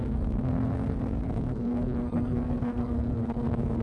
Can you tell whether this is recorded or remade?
remade